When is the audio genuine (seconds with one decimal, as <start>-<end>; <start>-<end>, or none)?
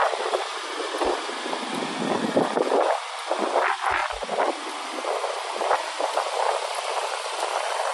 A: 0.0-7.9